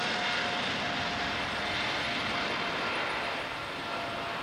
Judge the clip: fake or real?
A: real